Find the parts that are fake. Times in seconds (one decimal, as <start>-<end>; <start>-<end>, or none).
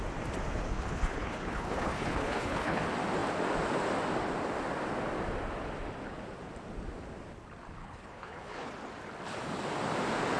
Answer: 0.7-2.8; 7.8-8.7